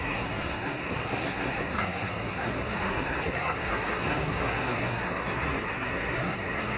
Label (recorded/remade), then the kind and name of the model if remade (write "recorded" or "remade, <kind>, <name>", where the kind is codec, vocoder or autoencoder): remade, codec, SNAC